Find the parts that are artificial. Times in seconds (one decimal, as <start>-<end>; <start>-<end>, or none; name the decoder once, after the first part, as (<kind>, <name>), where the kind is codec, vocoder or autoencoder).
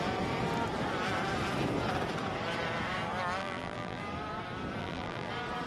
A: 3.4-4.0 (vocoder, BigVGAN v2); 4.8-5.3